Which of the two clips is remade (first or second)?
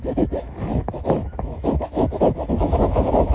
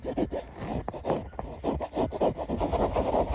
first